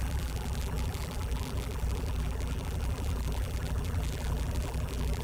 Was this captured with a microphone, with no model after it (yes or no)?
no